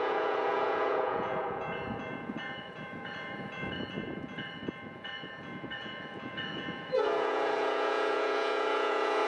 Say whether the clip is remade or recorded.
remade